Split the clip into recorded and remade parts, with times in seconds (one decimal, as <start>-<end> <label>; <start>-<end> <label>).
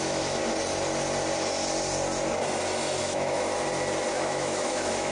0.0-0.4 remade; 0.4-3.0 recorded; 3.0-3.5 remade; 3.5-4.1 recorded; 4.1-5.1 remade